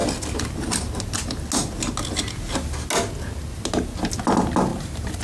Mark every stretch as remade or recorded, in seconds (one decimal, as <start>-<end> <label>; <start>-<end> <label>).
0.0-4.7 recorded; 4.7-5.2 remade